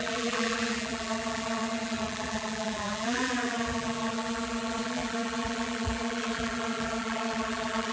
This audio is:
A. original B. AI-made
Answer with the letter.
B